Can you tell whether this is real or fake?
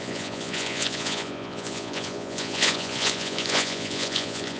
fake